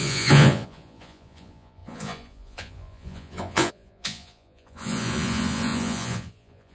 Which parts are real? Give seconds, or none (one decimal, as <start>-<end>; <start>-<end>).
none